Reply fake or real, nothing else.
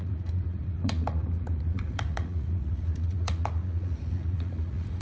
fake